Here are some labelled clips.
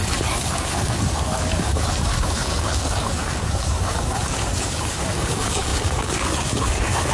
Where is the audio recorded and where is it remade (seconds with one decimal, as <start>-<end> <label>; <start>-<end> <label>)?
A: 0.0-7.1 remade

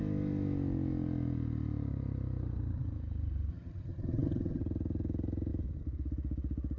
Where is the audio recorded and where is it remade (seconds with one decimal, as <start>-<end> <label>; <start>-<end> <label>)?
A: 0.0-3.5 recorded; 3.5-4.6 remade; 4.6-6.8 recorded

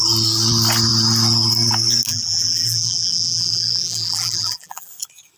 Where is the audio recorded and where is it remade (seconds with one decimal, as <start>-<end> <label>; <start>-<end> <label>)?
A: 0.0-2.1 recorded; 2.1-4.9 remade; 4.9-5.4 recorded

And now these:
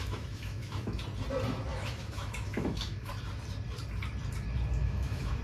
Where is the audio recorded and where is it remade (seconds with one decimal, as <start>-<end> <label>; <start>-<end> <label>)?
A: 0.0-1.0 remade; 1.0-1.7 recorded; 1.7-3.1 remade; 3.1-4.8 recorded; 4.8-5.4 remade

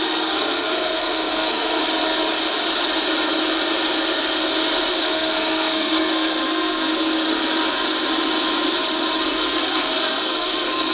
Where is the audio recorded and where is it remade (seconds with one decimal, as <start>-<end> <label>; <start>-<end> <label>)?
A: 0.0-1.8 remade; 1.8-4.9 recorded; 4.9-6.9 remade; 6.9-9.2 recorded; 9.2-10.9 remade